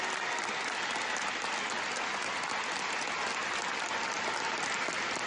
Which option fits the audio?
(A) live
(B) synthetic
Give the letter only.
A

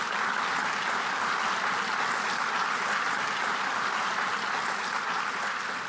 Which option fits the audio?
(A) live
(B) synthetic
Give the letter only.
A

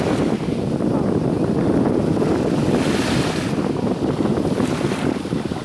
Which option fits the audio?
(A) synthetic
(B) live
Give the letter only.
B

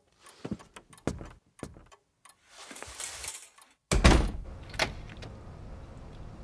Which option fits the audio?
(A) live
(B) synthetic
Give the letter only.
A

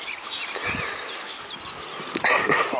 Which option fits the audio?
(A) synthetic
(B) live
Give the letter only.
B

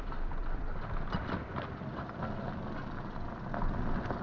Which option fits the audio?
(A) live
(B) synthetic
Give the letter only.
A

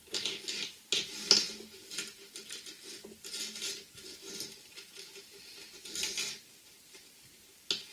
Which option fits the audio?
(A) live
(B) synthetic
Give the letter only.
A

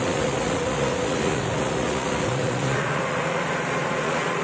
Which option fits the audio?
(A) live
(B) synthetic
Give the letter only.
B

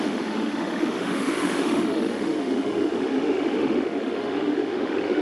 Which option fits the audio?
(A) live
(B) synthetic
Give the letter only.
B